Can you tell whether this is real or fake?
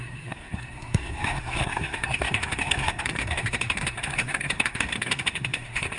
fake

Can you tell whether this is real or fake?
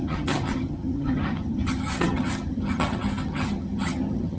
fake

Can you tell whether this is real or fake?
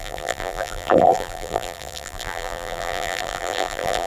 fake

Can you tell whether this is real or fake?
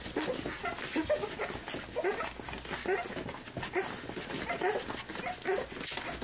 real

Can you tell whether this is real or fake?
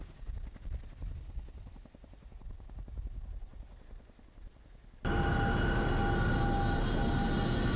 real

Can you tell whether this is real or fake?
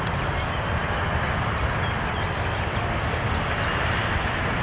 real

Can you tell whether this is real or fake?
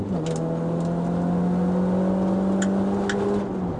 real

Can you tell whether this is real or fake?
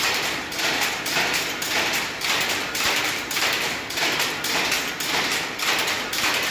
fake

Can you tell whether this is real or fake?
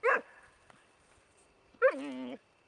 real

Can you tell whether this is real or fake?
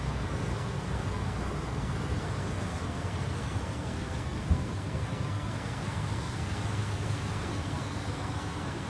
fake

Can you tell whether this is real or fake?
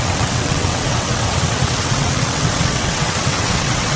fake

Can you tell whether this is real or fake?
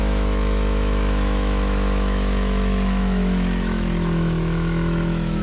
fake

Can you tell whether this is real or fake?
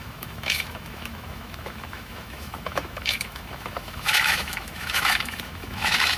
fake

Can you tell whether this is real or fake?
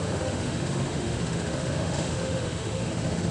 fake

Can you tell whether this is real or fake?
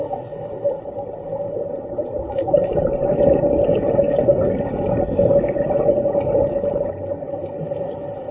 real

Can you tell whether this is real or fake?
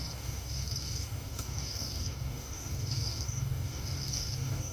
fake